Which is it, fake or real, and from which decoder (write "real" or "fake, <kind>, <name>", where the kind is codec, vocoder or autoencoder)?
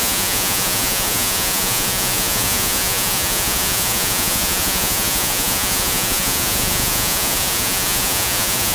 fake, vocoder, Vocos